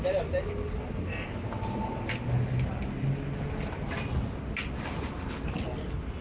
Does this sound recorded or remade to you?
recorded